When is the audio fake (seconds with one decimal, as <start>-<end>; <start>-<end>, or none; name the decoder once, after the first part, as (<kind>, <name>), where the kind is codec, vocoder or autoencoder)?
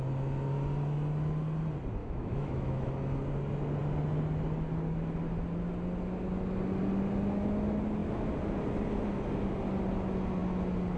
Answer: 2.0-2.9 (autoencoder, DAC-VAE)